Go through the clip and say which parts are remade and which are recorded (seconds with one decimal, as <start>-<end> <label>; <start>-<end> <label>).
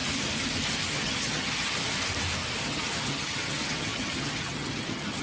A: 0.0-0.9 recorded; 0.9-1.8 remade; 1.8-2.6 recorded; 2.6-5.2 remade